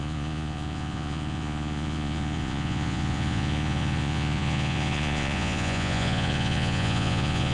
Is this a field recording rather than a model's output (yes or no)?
no